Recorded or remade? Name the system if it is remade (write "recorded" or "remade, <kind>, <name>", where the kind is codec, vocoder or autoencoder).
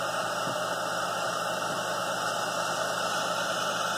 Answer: remade, vocoder, BigVGAN v2